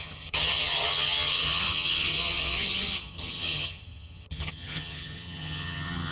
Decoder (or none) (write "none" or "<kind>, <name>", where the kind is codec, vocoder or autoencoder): vocoder, HiFi-GAN